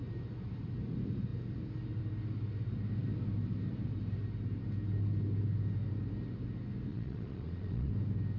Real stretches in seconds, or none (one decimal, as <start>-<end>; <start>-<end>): 0.0-6.9; 7.9-8.4